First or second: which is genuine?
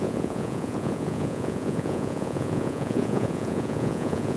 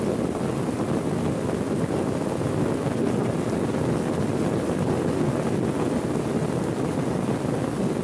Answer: second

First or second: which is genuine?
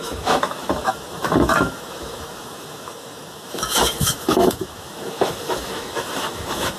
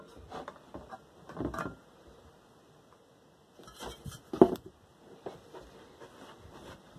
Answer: second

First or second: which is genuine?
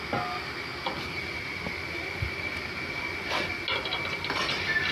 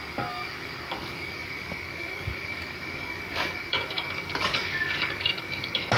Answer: first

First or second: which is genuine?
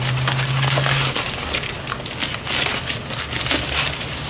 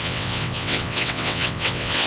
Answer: first